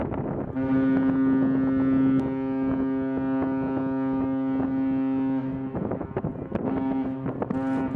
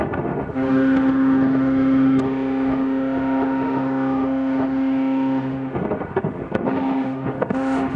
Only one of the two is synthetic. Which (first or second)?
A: second